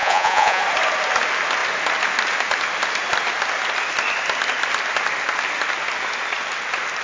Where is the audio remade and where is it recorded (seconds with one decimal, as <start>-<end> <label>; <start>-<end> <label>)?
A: 0.0-0.6 remade; 0.6-7.0 recorded